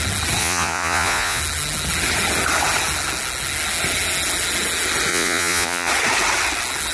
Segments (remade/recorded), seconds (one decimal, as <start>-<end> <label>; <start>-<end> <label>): 0.0-0.4 recorded; 0.4-1.4 remade; 1.4-5.1 recorded; 5.1-5.9 remade; 5.9-6.9 recorded